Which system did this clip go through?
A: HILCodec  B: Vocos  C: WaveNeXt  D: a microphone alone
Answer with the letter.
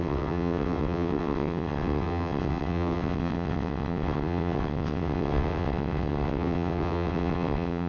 C